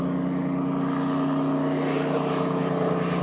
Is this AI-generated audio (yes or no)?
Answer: no